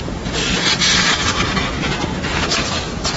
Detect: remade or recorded remade